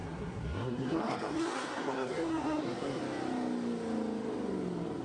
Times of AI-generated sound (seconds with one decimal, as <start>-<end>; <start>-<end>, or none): 0.0-3.0